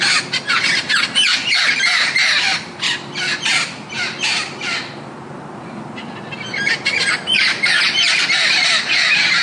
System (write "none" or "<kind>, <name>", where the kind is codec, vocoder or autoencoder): vocoder, BigVGAN v2